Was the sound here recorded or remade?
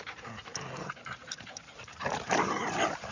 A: remade